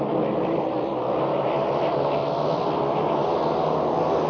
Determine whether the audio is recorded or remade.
recorded